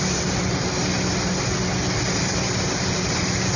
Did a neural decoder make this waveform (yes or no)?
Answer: no